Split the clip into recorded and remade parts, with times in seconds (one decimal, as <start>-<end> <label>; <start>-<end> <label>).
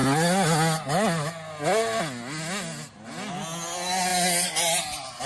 0.0-5.3 recorded